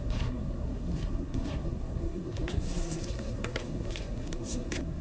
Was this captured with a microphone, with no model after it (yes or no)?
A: no